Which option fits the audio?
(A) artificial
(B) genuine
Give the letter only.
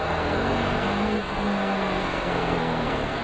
A